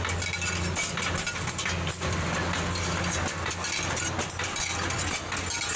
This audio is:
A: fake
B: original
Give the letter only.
B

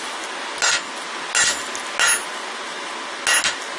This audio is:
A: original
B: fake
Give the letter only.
A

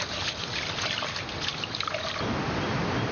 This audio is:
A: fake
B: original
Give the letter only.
B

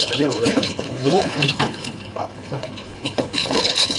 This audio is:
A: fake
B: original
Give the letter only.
A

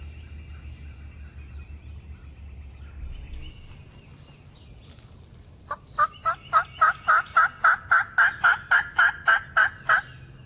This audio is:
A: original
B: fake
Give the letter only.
A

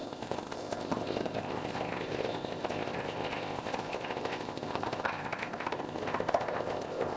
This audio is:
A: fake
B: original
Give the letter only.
A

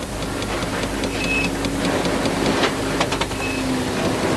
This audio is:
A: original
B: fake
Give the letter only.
A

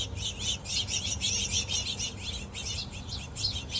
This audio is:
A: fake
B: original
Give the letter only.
B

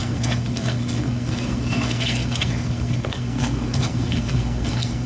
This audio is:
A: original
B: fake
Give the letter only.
B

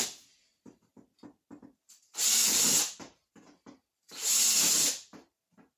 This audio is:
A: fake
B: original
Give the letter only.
A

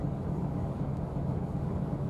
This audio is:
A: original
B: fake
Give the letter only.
B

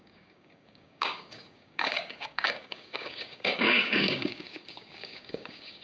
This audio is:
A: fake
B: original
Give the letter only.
A